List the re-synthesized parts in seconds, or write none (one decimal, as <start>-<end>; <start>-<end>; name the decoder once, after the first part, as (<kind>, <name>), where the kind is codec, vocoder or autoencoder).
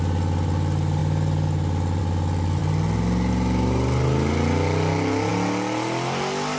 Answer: none